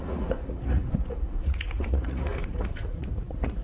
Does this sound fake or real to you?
fake